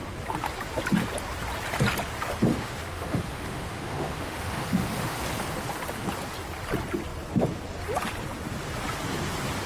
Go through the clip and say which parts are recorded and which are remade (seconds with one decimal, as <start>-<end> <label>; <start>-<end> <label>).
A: 0.0-2.5 recorded; 2.5-5.2 remade; 5.2-9.7 recorded